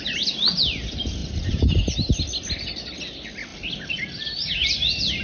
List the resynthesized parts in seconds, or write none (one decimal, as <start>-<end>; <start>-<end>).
1.2-1.8; 3.5-4.5